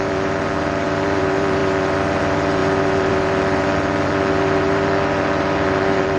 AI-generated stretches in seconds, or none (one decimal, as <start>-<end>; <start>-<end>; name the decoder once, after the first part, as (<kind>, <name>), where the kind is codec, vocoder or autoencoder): 0.0-6.2 (vocoder, BigVGAN v2)